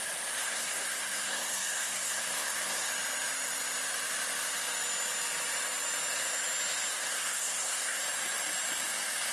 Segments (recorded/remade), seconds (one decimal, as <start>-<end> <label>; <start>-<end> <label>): 0.0-0.4 recorded; 0.4-2.9 remade; 2.9-6.9 recorded; 6.9-8.0 remade; 8.0-9.3 recorded